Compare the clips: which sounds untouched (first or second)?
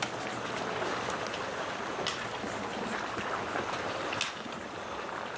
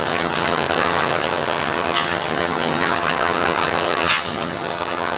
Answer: first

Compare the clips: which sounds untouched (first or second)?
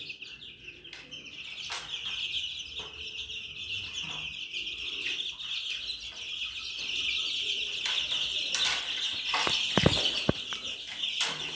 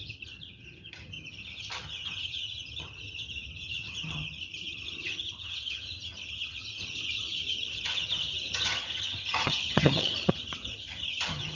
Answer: first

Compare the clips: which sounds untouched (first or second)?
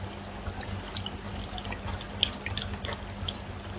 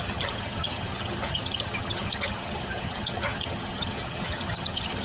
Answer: first